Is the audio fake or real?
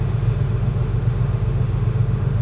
fake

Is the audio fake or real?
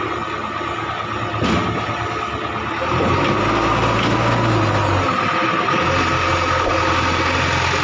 real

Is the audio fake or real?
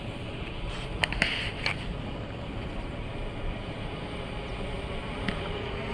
real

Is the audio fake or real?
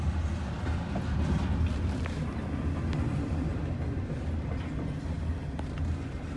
real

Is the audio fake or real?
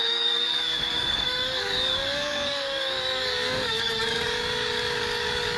fake